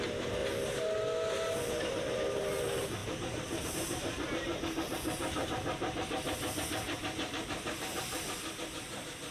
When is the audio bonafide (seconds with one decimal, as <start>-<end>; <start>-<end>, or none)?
0.4-1.7